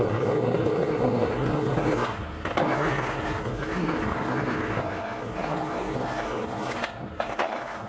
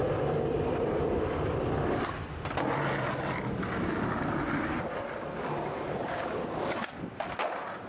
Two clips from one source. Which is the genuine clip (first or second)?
second